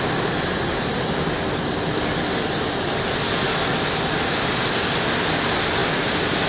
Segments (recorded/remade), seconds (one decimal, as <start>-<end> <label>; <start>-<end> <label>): 0.0-6.5 recorded

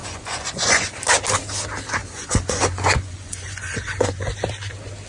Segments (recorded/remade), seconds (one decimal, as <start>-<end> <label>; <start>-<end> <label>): 0.0-0.9 remade; 0.9-2.0 recorded; 2.0-4.3 remade; 4.3-5.1 recorded

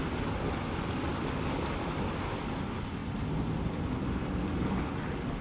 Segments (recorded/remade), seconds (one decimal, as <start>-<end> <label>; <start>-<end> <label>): 0.0-5.4 recorded

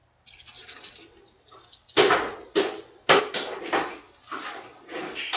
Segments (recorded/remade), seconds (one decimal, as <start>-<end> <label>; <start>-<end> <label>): 0.0-5.4 recorded

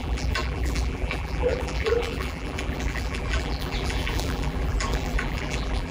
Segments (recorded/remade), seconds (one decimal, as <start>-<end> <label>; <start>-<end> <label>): 0.0-5.9 remade

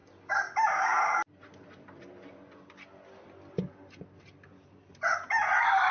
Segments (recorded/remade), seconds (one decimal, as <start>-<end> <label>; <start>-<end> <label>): 0.0-5.9 recorded